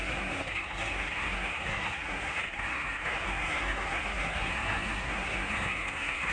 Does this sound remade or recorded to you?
remade